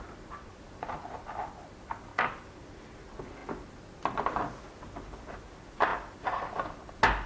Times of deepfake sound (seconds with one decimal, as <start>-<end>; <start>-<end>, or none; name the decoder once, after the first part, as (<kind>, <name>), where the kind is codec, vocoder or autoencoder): none